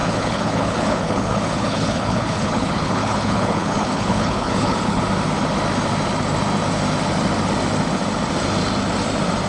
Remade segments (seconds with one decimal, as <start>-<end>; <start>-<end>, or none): 0.0-5.0